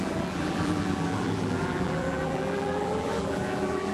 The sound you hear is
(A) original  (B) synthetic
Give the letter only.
B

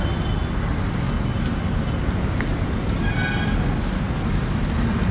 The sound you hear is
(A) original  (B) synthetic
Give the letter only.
A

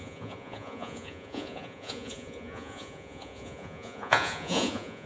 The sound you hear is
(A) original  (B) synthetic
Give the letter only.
B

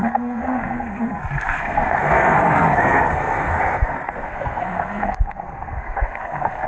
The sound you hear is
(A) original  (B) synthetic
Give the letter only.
B